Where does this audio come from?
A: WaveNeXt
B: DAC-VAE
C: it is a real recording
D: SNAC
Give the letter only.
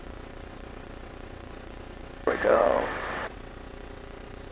A